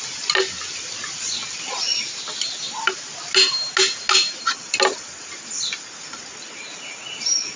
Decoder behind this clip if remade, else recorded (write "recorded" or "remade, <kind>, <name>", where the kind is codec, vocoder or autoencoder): recorded